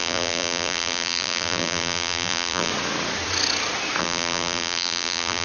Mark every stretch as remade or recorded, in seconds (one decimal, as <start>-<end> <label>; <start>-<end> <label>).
0.0-2.7 remade; 2.7-4.0 recorded; 4.0-5.4 remade